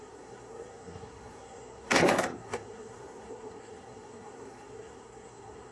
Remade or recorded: remade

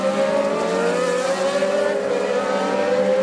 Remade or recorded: recorded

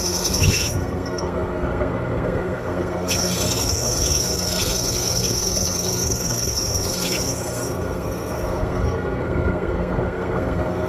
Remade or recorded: remade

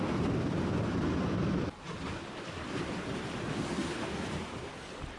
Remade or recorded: recorded